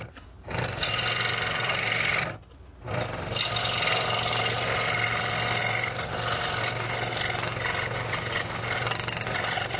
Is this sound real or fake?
real